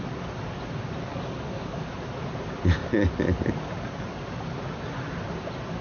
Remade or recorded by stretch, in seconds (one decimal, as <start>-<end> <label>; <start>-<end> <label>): 0.0-1.1 recorded; 1.1-1.9 remade; 1.9-5.8 recorded